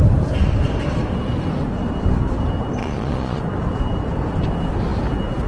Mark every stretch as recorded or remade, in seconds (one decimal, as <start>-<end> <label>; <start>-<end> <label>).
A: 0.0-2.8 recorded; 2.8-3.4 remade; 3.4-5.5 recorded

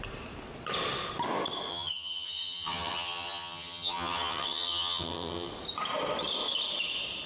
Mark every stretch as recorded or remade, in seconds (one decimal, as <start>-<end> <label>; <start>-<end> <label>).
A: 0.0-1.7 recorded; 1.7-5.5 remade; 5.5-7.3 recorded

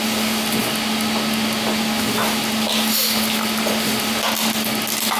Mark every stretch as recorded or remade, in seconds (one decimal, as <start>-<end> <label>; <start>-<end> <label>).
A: 0.0-5.2 recorded

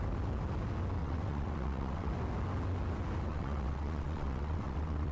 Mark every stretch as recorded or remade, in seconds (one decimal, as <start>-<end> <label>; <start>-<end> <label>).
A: 0.0-1.0 recorded; 1.0-2.1 remade; 2.1-3.3 recorded; 3.3-5.1 remade

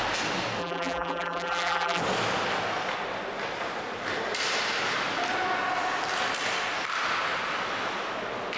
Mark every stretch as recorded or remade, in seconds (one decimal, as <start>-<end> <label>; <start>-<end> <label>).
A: 0.0-0.6 recorded; 0.6-2.0 remade; 2.0-8.6 recorded

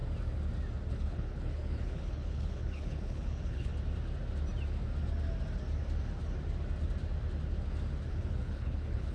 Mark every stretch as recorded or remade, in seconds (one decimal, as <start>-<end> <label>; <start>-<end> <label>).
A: 0.0-0.9 recorded; 0.9-3.7 remade; 3.7-8.1 recorded; 8.1-9.1 remade

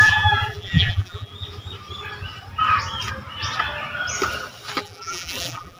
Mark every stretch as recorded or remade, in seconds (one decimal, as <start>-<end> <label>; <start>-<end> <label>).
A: 0.0-1.3 remade; 1.3-4.8 recorded; 4.8-5.8 remade